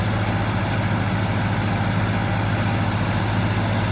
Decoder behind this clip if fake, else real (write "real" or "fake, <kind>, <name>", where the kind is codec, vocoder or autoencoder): real